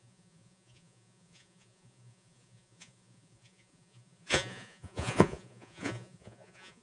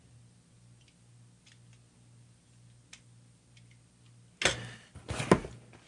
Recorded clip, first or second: second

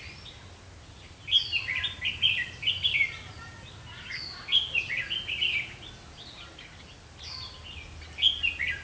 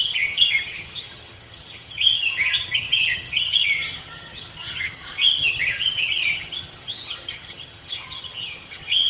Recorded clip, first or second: first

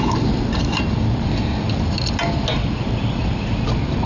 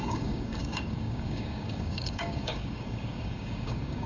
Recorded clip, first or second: first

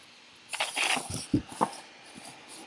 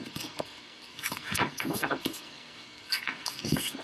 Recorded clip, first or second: first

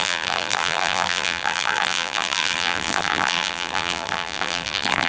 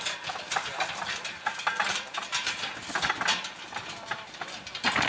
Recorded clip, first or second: second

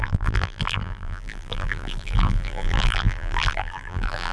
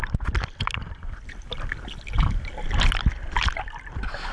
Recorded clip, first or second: second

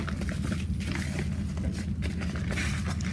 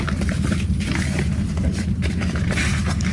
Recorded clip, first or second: first